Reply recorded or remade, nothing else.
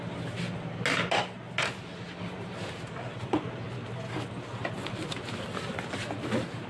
recorded